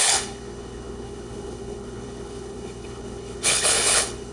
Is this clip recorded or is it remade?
remade